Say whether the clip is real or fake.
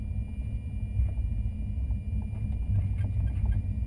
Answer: real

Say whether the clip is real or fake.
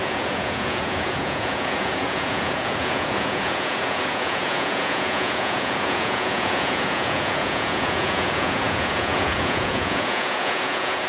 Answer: fake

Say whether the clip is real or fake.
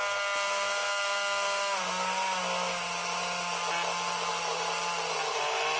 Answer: real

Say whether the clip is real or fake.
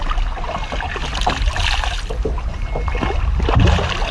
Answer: real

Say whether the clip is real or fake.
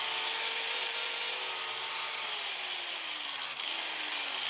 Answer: real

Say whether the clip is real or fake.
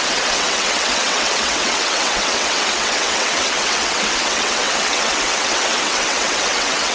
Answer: fake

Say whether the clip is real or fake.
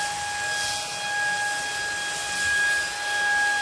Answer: real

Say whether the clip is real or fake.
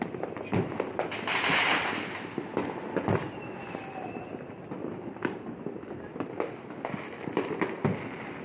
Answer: real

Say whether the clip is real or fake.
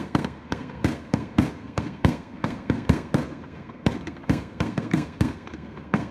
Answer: fake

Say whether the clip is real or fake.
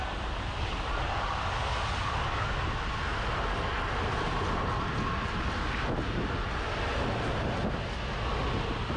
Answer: real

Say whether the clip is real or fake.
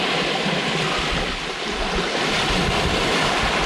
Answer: real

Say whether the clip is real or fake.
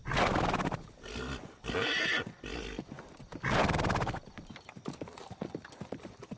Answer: real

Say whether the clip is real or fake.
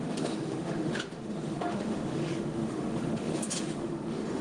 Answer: fake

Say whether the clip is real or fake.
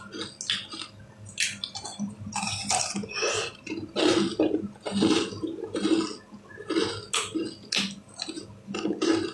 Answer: real